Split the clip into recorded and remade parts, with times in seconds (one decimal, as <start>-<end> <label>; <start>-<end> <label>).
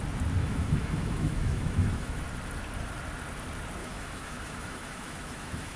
0.0-0.4 recorded; 0.4-2.2 remade; 2.2-3.8 recorded; 3.8-5.8 remade